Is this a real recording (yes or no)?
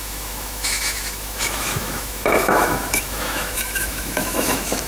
no